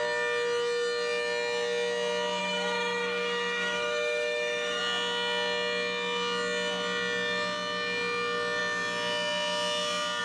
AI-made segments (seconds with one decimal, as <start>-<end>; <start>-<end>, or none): 2.4-4.8